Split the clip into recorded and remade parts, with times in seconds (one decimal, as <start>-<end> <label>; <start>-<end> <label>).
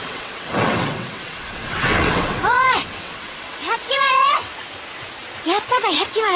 0.0-4.5 remade; 4.5-5.7 recorded; 5.7-6.4 remade